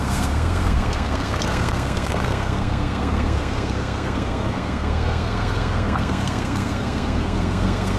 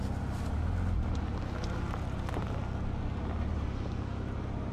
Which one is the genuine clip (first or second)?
second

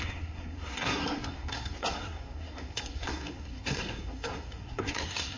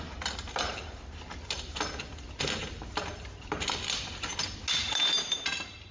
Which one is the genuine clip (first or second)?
second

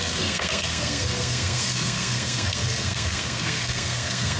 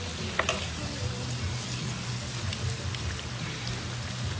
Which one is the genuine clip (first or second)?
second